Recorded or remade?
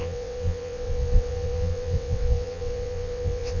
remade